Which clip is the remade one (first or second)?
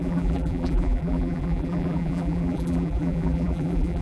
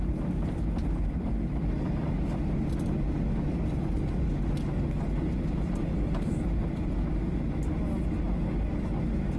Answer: first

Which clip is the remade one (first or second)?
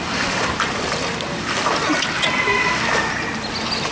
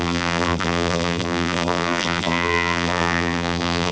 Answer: second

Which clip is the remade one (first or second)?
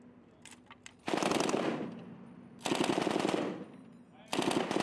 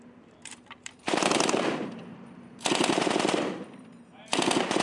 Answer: second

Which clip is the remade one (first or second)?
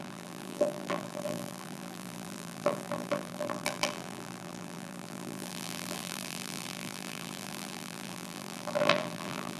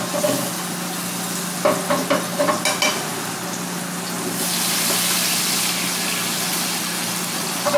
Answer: first